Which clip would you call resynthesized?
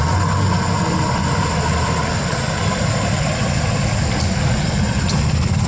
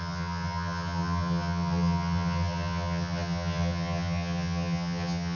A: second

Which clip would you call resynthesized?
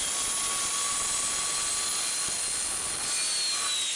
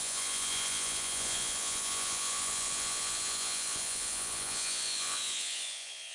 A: second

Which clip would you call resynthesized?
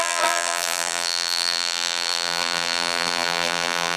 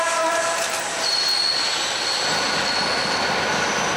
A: first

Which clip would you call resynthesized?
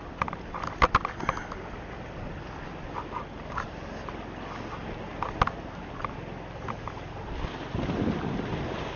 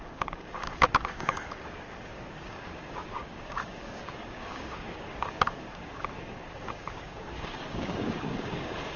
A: second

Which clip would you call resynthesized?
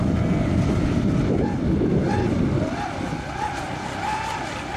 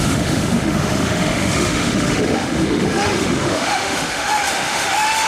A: second